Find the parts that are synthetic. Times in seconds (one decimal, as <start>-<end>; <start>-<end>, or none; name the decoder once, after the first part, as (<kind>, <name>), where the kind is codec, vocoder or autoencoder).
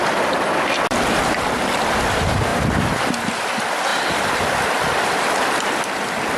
0.0-2.5 (vocoder, BigVGAN v2); 3.1-6.4